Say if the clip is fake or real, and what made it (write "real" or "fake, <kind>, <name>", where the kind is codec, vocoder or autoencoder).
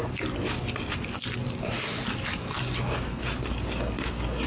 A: real